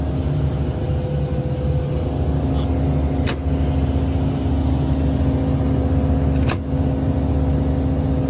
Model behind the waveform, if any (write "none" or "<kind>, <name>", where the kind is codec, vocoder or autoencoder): none